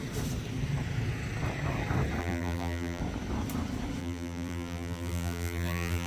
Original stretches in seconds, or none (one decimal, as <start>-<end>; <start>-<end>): 0.0-2.2; 3.0-4.0